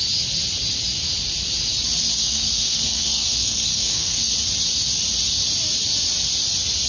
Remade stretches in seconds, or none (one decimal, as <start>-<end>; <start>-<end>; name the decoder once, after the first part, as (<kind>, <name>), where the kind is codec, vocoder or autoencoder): 2.2-4.3 (codec, SNAC)